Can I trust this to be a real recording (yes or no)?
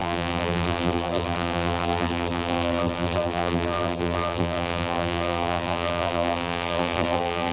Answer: no